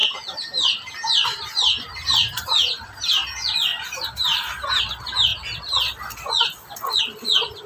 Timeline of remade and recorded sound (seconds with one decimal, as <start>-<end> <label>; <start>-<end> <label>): 0.0-3.1 remade; 3.1-3.7 recorded; 3.7-4.8 remade; 4.8-7.7 recorded

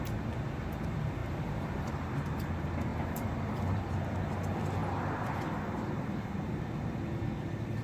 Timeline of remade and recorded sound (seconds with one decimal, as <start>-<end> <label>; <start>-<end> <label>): 0.0-1.2 recorded; 1.2-2.1 remade; 2.1-2.9 recorded; 2.9-3.9 remade; 3.9-4.8 recorded; 4.8-6.6 remade; 6.6-7.8 recorded

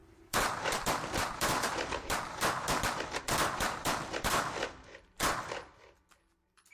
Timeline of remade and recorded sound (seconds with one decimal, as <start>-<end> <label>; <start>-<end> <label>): 0.0-6.7 remade

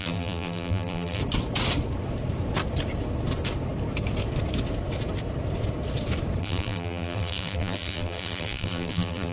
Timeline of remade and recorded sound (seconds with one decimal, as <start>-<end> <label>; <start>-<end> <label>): 0.0-1.2 remade; 1.2-6.4 recorded; 6.4-9.3 remade

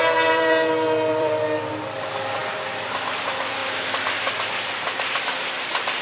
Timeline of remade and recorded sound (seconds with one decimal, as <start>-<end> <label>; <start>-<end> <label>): 0.0-2.4 remade; 2.4-2.9 recorded; 2.9-3.6 remade; 3.6-5.1 recorded; 5.1-6.0 remade

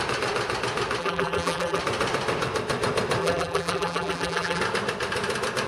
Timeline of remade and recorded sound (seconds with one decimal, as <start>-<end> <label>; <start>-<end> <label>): 0.0-1.0 recorded; 1.0-1.8 remade; 1.8-3.2 recorded; 3.2-4.6 remade; 4.6-5.7 recorded